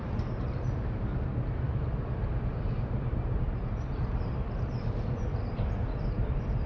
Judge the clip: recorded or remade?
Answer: remade